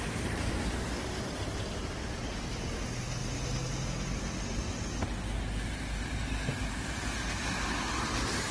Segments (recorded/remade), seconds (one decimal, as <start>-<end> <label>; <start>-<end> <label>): 0.0-8.5 recorded